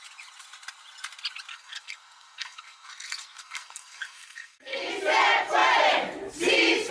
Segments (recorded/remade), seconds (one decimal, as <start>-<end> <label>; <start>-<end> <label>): 0.0-1.5 recorded; 1.5-4.9 remade; 4.9-6.9 recorded